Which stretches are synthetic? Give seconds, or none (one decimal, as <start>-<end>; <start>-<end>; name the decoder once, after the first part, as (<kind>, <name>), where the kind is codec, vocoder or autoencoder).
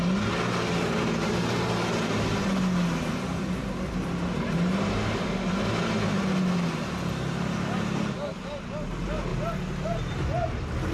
none